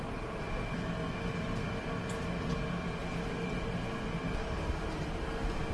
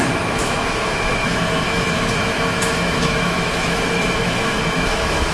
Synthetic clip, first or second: second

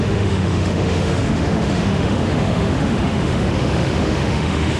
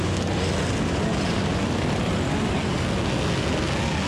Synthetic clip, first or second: first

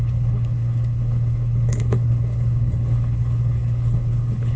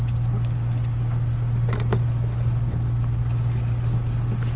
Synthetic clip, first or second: first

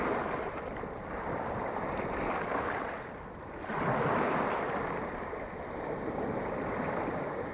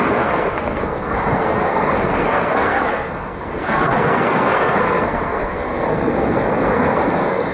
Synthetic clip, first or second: second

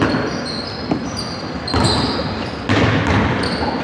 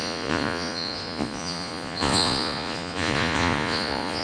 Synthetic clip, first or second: second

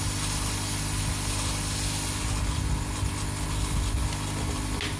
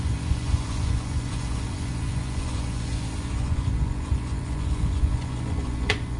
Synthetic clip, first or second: second